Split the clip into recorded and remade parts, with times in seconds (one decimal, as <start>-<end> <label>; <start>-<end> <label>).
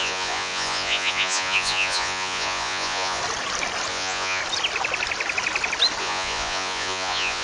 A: 0.0-3.2 remade; 3.2-3.9 recorded; 3.9-4.4 remade; 4.4-6.0 recorded; 6.0-7.4 remade